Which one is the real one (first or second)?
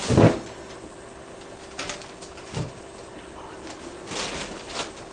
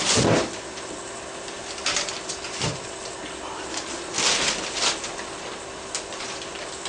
first